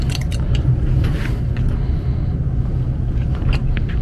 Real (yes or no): yes